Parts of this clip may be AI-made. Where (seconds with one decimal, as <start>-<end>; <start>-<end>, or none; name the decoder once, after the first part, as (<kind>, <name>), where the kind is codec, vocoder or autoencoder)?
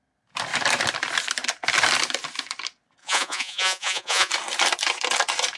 3.0-4.3 (vocoder, Vocos)